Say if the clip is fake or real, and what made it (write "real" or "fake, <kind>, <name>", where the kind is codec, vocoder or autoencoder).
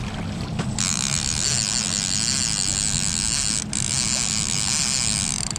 real